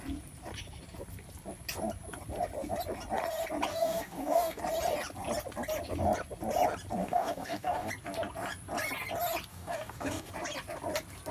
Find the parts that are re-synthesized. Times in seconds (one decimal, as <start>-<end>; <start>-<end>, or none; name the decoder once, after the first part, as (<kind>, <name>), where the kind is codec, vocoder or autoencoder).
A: 3.7-4.6 (codec, DAC); 7.0-7.9; 9.5-10.3